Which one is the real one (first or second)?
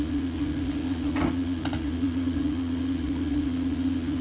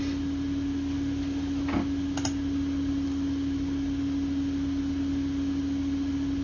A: second